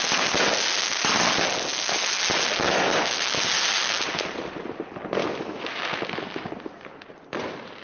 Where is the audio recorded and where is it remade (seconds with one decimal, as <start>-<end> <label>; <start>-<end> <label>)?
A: 0.0-5.2 recorded; 5.2-6.5 remade; 6.5-7.8 recorded